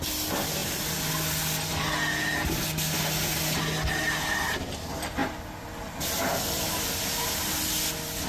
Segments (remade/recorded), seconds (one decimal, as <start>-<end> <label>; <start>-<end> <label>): 0.0-8.3 recorded